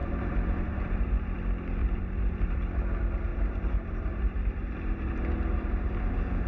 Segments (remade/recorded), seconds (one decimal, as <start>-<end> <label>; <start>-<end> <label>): 0.0-1.4 remade; 1.4-1.8 recorded; 1.8-2.6 remade; 2.6-3.3 recorded; 3.3-5.2 remade; 5.2-6.5 recorded

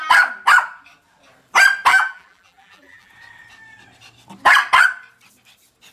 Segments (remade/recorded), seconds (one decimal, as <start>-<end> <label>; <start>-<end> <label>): 0.0-1.9 recorded; 1.9-3.1 remade; 3.1-5.9 recorded

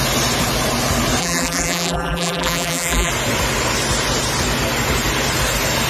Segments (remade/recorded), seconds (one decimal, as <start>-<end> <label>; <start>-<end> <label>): 0.0-1.2 recorded; 1.2-3.1 remade; 3.1-5.9 recorded